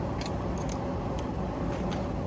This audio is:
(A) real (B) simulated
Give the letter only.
A